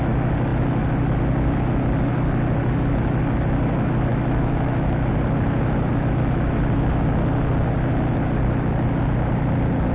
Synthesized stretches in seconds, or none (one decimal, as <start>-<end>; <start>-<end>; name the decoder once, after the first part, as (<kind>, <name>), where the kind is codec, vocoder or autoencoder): 4.1-5.1 (autoencoder, DAC-VAE)